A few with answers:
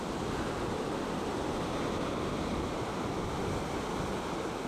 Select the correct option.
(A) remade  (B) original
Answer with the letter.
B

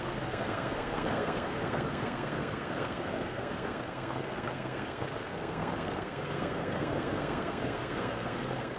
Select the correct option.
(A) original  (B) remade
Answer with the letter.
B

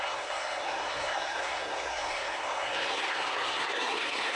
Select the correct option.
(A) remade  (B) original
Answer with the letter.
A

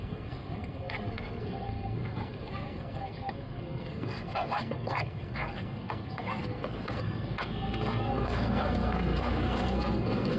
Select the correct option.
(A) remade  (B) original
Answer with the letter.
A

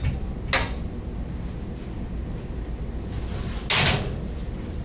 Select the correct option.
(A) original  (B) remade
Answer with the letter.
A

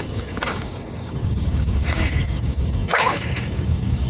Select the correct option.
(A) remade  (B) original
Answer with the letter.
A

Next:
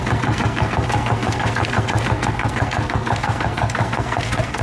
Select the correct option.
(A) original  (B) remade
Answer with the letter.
B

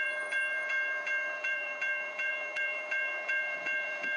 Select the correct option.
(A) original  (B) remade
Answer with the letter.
B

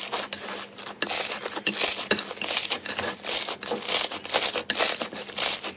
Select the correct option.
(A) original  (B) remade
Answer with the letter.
A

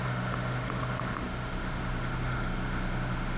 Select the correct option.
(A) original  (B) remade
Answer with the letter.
B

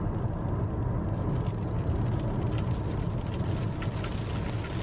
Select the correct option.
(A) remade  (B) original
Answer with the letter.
B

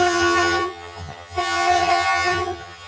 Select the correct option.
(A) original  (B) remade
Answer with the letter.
B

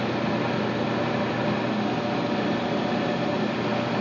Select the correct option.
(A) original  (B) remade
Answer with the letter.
A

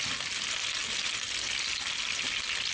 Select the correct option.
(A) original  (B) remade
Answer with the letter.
A